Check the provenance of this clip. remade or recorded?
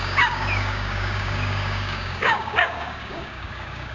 remade